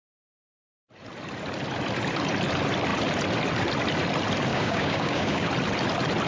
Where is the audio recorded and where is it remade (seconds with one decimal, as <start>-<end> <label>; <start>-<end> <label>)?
0.0-4.5 recorded; 4.5-5.5 remade; 5.5-6.3 recorded